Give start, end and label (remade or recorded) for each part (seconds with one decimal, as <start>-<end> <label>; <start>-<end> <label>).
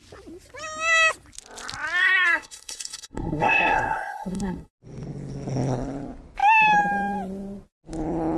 0.0-2.0 recorded; 2.0-4.7 remade; 4.7-8.4 recorded